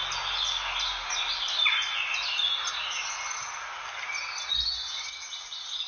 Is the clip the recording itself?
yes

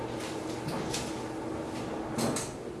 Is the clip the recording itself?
yes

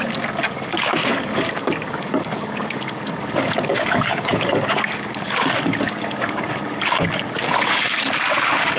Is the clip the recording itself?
no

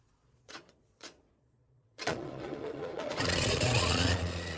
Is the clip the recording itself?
no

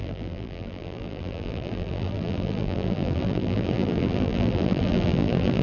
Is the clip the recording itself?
no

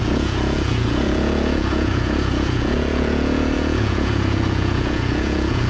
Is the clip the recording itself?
no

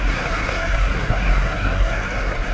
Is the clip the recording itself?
no